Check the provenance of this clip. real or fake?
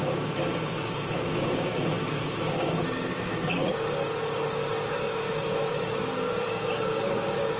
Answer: fake